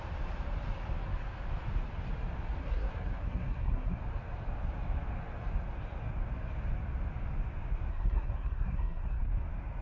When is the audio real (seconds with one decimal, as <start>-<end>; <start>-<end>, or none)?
0.0-2.6; 4.0-7.9; 9.2-9.8